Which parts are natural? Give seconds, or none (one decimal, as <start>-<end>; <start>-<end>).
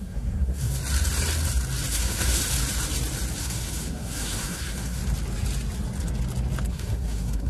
0.8-1.9; 2.4-3.4; 5.0-6.7